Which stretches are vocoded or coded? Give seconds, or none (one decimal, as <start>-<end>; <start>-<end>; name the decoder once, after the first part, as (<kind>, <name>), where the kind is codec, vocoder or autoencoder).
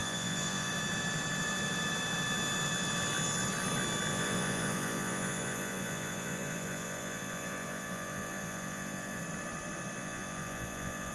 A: 0.0-0.7 (vocoder, Vocos); 4.1-9.2; 10.0-11.1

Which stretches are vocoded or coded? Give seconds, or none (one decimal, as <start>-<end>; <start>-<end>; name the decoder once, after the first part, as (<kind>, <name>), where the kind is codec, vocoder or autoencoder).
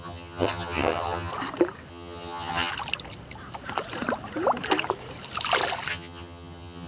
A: 0.0-1.3 (vocoder, HiFi-GAN); 1.9-2.7; 5.9-6.9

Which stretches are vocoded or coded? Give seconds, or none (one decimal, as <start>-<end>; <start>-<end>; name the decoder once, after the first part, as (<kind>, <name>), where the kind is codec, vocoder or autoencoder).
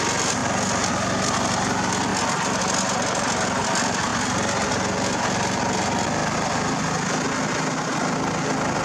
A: none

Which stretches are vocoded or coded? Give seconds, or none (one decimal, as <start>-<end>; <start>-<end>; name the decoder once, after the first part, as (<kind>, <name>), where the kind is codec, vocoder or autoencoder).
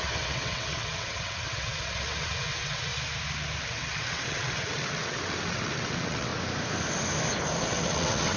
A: 0.0-2.9 (vocoder, WaveNeXt); 3.6-6.3; 7.6-8.4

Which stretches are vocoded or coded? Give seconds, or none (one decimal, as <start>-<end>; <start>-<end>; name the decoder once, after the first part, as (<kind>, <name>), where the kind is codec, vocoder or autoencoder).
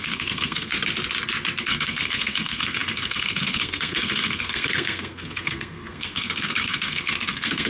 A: 0.0-0.7 (codec, SNAC); 1.6-7.7